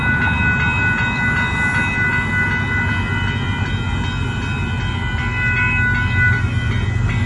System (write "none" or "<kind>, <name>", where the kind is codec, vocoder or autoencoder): none